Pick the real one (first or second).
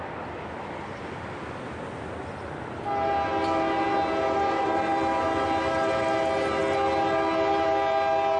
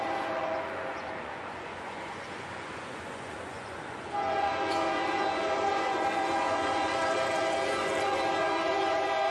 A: first